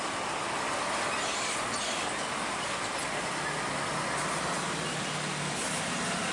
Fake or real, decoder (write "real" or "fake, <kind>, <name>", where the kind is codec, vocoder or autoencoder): real